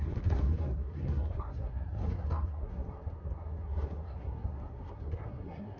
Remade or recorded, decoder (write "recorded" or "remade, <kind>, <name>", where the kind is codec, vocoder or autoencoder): remade, codec, SNAC